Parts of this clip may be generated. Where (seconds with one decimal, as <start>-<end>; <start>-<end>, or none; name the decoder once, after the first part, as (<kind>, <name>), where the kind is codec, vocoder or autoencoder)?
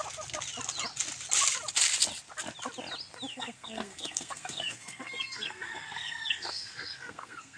3.3-7.6 (codec, SNAC)